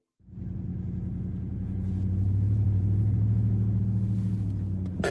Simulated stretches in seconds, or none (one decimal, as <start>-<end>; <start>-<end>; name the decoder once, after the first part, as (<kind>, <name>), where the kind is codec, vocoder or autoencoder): 0.7-3.8 (vocoder, Vocos)